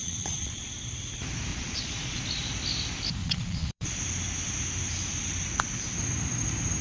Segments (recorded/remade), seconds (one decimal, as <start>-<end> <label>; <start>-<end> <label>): 0.0-0.7 remade; 0.7-1.5 recorded; 1.5-2.2 remade; 2.2-3.2 recorded; 3.2-4.0 remade; 4.0-6.8 recorded